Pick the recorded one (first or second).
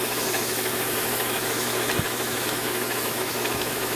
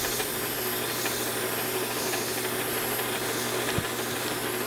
second